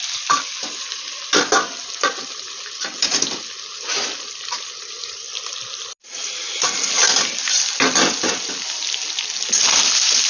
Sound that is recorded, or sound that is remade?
recorded